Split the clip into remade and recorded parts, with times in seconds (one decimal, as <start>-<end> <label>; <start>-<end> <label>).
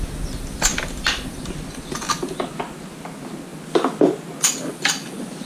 0.0-5.5 recorded